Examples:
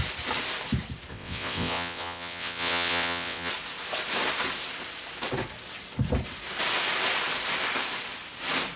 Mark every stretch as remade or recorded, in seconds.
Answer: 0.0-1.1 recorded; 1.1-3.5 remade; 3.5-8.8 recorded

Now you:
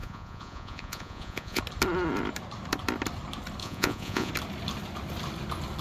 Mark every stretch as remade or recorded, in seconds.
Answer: 0.0-1.6 remade; 1.6-3.6 recorded; 3.6-4.3 remade; 4.3-5.8 recorded